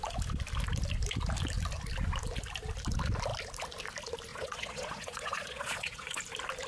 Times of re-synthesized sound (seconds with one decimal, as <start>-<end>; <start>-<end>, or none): 4.3-6.2